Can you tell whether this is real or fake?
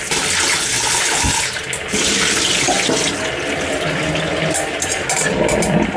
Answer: real